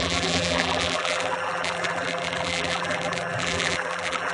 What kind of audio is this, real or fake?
fake